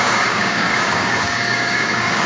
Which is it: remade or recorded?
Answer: remade